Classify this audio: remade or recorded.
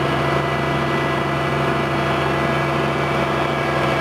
recorded